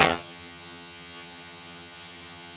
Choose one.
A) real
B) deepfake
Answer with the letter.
B